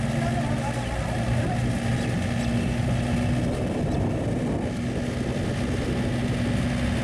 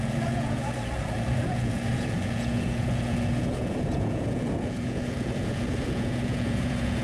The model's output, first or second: second